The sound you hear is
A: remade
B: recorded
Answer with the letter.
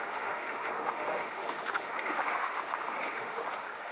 A